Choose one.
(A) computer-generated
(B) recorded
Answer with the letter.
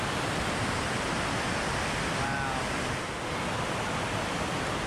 B